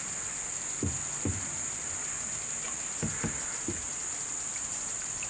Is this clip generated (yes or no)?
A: no